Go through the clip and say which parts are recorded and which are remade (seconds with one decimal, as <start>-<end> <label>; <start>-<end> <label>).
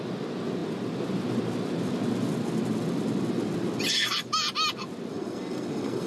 0.0-5.1 recorded; 5.1-6.1 remade